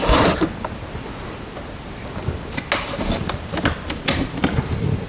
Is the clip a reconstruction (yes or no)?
no